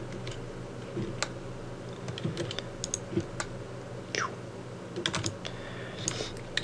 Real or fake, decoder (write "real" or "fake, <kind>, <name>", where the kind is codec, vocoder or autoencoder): real